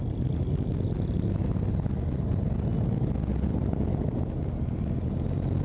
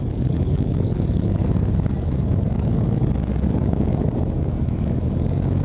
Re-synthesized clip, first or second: second